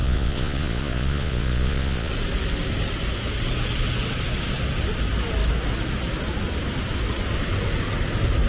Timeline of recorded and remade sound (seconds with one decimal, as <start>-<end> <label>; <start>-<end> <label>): 0.0-2.1 remade; 2.1-8.5 recorded